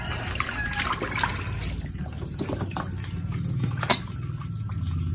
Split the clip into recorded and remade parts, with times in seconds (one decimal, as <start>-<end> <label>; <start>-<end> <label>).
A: 0.0-5.1 recorded